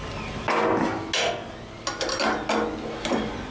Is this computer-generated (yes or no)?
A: no